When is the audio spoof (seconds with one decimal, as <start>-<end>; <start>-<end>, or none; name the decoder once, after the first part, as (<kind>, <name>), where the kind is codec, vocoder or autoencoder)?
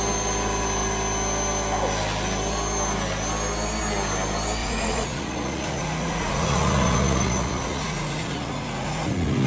4.6-9.5 (vocoder, Vocos)